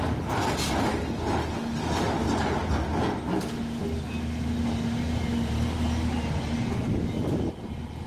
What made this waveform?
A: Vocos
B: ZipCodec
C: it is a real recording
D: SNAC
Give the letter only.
C